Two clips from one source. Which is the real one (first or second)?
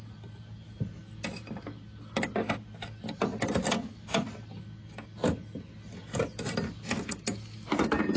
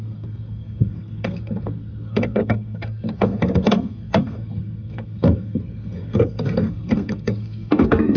first